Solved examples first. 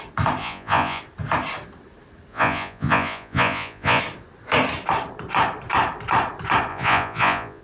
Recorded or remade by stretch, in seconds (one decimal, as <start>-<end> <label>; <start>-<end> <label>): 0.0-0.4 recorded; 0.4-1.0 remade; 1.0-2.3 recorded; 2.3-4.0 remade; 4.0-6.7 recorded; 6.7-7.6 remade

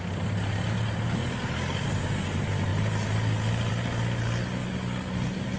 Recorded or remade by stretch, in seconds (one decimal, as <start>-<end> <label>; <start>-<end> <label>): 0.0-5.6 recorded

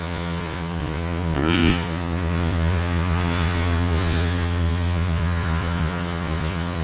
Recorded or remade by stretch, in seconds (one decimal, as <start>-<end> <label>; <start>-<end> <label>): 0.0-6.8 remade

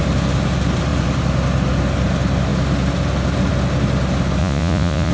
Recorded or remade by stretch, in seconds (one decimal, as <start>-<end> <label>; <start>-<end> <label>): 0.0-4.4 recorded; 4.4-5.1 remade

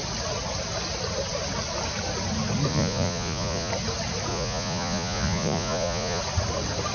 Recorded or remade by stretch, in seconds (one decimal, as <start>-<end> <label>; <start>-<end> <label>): 0.0-2.7 recorded; 2.7-3.7 remade; 3.7-4.3 recorded; 4.3-6.2 remade; 6.2-6.9 recorded